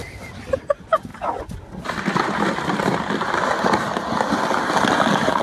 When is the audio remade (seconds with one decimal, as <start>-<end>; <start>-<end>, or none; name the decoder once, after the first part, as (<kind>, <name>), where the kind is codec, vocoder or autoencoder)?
none